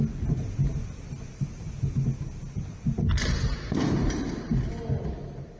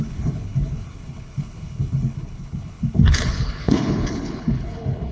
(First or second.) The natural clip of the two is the first